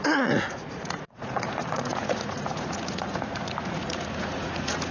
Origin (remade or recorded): remade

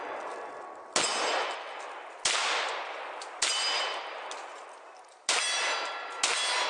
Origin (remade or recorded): recorded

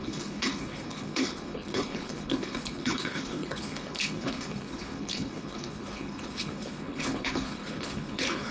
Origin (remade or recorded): remade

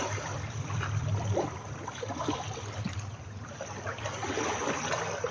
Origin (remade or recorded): remade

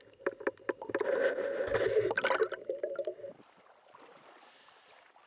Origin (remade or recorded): remade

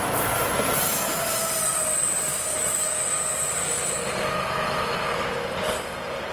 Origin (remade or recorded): recorded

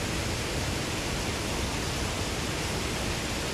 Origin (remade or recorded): recorded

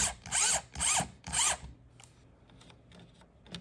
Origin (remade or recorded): recorded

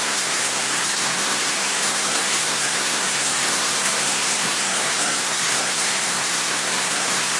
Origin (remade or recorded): remade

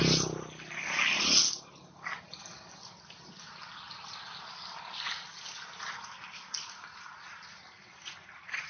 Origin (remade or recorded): recorded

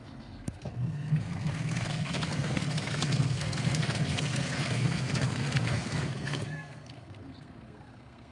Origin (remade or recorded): remade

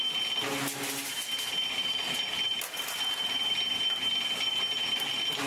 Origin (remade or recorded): recorded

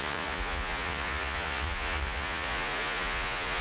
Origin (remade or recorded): remade